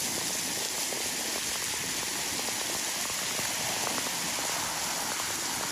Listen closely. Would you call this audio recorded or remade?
recorded